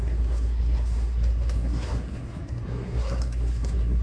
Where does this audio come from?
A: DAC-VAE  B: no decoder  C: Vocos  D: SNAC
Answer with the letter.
D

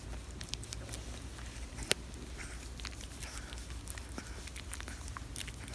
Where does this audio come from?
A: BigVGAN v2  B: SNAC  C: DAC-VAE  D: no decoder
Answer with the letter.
D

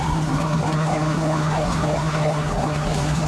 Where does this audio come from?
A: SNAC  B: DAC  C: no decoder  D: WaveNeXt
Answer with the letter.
A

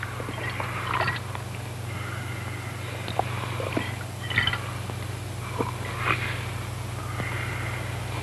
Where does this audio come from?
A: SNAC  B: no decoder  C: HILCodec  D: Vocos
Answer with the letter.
B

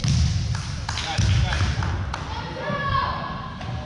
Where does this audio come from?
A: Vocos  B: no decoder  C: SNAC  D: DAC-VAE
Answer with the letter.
B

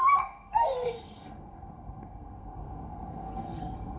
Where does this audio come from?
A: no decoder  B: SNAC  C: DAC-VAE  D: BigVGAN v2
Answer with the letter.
B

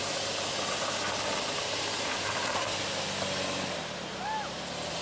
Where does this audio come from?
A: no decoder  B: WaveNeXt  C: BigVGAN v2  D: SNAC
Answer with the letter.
A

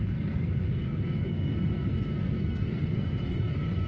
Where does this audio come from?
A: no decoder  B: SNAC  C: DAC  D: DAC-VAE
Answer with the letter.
B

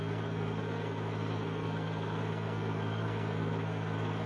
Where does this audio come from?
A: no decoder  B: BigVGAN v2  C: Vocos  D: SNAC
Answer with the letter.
D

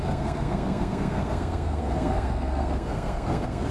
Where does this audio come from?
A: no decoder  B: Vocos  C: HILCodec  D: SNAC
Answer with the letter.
D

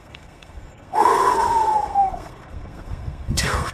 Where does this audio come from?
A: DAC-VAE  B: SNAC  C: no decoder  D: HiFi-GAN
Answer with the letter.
B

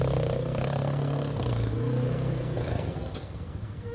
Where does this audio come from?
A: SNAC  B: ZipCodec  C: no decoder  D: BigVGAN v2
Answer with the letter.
A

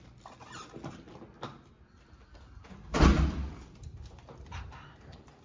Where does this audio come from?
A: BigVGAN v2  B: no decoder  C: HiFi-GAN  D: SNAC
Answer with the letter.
B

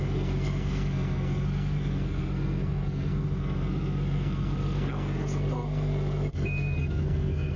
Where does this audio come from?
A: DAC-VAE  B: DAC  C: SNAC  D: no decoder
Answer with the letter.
C